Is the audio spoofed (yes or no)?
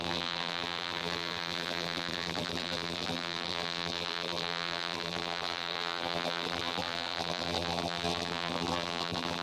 yes